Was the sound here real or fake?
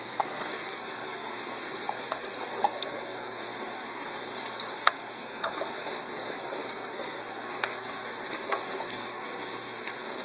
fake